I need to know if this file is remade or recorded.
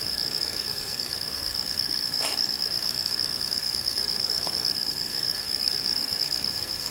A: remade